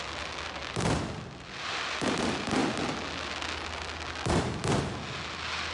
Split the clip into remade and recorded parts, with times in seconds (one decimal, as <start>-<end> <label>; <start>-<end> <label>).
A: 0.0-5.7 recorded